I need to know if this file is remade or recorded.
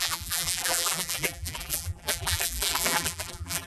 remade